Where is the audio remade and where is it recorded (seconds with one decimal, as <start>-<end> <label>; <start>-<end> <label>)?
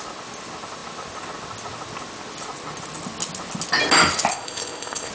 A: 0.0-4.3 recorded; 4.3-5.1 remade